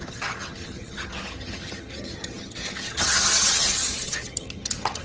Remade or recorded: remade